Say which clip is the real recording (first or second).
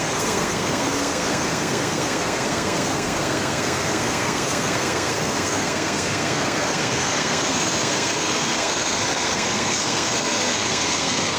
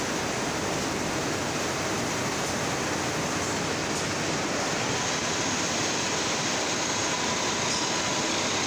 second